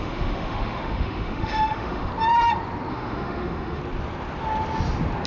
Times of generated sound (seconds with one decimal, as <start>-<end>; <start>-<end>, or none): 0.0-2.1; 2.9-3.8